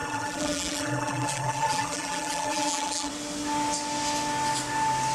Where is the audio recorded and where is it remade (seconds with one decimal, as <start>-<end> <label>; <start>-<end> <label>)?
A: 0.0-3.1 remade; 3.1-5.1 recorded